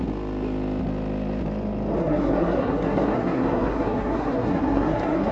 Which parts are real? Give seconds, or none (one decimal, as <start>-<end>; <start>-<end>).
0.0-2.0